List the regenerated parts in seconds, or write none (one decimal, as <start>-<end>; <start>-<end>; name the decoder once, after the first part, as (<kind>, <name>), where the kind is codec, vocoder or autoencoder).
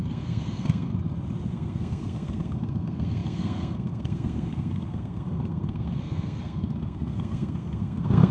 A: 0.0-0.9 (codec, SNAC); 1.5-8.3